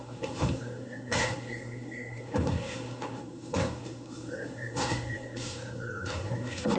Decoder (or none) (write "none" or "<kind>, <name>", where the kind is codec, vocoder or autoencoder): codec, SNAC